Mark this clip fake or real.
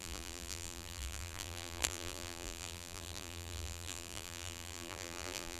fake